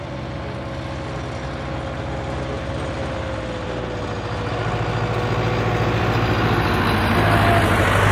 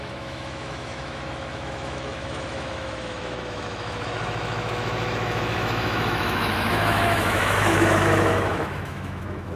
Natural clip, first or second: first